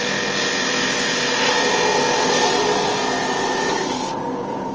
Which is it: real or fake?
real